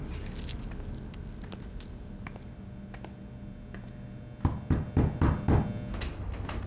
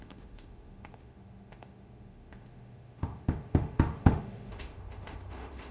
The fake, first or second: second